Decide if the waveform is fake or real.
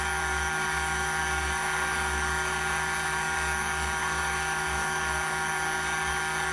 fake